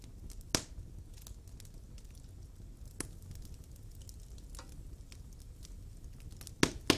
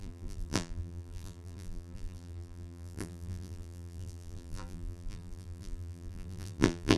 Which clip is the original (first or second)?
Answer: first